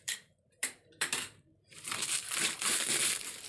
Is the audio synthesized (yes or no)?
yes